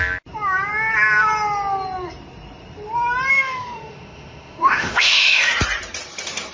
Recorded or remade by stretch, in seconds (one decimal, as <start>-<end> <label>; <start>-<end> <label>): 0.0-3.3 recorded; 3.3-5.5 remade; 5.5-6.5 recorded